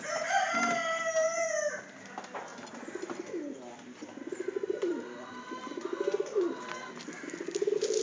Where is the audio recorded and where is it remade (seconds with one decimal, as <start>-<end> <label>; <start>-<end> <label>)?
0.0-8.0 recorded